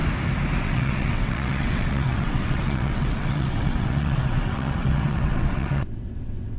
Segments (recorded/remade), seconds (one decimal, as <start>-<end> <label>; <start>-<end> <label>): 0.0-0.6 recorded; 0.6-6.6 remade